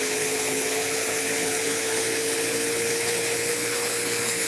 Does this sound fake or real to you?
fake